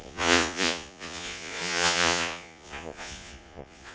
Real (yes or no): no